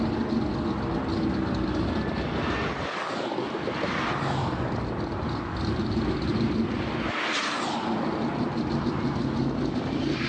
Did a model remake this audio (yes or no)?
no